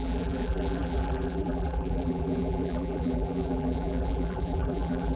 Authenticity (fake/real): fake